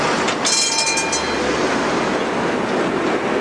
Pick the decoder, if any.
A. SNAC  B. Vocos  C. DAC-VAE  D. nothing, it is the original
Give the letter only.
D